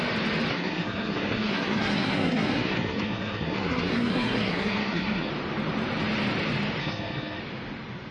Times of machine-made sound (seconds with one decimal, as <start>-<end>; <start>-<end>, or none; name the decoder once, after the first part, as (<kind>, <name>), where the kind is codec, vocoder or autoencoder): 0.5-5.3 (codec, SNAC); 6.8-7.4